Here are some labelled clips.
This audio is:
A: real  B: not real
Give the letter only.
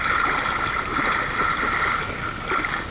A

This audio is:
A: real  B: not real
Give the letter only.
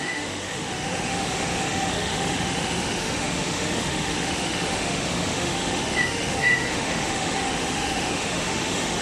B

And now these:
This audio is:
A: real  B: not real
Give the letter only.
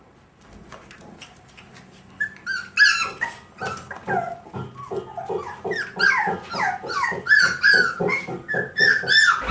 A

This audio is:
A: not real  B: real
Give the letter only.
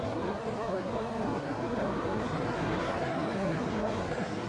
A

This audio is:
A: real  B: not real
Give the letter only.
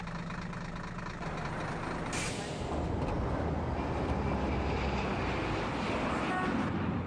A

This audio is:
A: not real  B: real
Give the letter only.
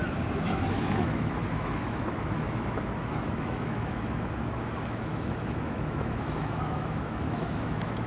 A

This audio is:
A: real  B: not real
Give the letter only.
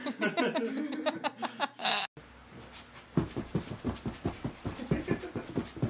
A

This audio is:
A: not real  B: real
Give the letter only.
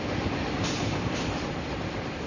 B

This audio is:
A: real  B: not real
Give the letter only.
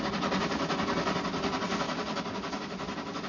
A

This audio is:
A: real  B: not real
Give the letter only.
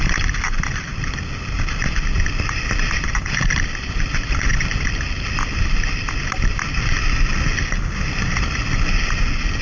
A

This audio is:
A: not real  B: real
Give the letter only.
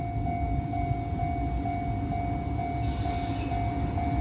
B